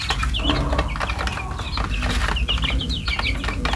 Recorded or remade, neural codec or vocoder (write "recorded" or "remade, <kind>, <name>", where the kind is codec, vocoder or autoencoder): recorded